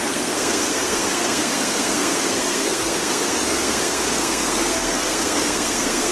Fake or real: fake